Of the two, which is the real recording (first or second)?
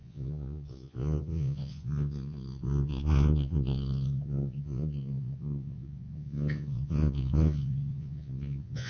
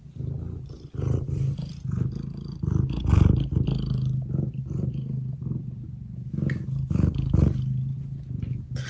second